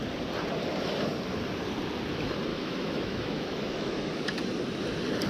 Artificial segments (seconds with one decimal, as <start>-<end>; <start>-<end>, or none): 2.5-4.1